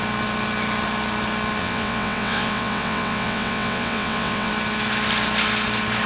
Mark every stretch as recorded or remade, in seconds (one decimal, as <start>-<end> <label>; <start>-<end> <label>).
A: 0.0-1.6 recorded; 1.6-4.5 remade; 4.5-6.1 recorded